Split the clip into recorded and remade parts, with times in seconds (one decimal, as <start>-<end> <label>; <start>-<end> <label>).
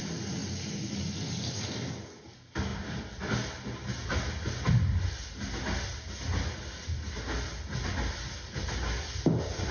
0.0-9.7 recorded